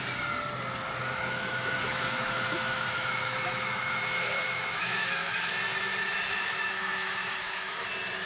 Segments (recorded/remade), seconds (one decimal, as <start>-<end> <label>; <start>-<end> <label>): 0.0-1.0 recorded; 1.0-5.5 remade; 5.5-6.0 recorded; 6.0-7.9 remade; 7.9-8.3 recorded